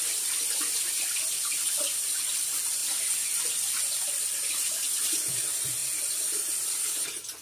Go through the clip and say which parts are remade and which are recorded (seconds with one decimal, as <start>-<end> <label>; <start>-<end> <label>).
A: 0.0-0.8 recorded; 0.8-1.9 remade; 1.9-7.4 recorded